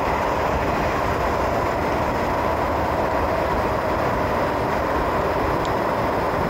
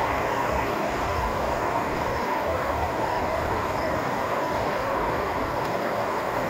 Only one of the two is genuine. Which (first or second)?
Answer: first